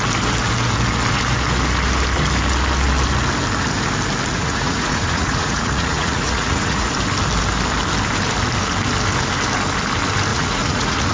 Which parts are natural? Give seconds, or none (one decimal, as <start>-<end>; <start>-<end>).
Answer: 0.0-4.3; 6.9-10.3